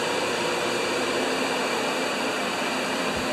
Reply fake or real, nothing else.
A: fake